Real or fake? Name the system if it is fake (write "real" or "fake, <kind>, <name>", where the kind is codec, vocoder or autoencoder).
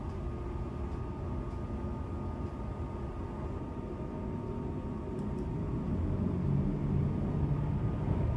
real